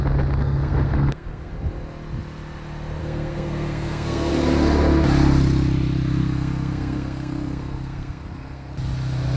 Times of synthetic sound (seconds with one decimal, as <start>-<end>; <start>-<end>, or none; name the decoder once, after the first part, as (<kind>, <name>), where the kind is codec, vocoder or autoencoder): 0.4-1.5 (codec, SNAC); 3.0-4.3; 6.2-8.7